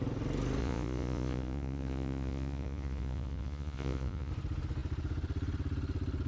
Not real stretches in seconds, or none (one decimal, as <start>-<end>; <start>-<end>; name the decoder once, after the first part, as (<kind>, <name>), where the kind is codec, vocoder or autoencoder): 0.6-4.3 (vocoder, Vocos)